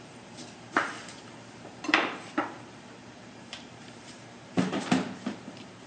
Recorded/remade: remade